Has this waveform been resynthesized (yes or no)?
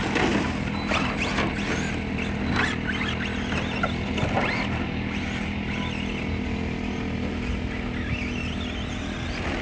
no